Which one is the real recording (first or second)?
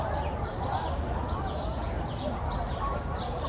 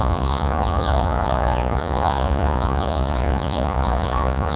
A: first